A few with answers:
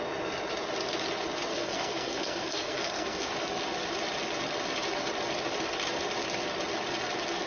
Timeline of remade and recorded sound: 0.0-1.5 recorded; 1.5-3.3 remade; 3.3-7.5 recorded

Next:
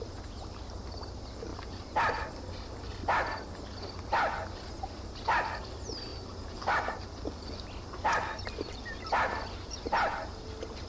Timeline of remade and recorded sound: 0.0-10.9 recorded